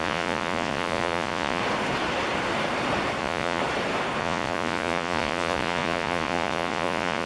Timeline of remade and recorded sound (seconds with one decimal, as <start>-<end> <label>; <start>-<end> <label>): 0.0-1.6 remade; 1.6-3.2 recorded; 3.2-3.6 remade; 3.6-4.2 recorded; 4.2-7.3 remade